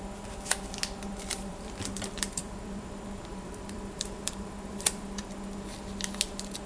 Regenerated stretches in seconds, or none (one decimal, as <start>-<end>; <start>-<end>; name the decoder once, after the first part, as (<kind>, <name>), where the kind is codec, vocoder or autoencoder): 1.1-2.8 (vocoder, BigVGAN v2); 3.3-5.2